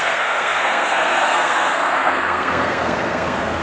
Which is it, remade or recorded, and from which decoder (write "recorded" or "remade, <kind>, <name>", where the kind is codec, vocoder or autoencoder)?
remade, codec, SNAC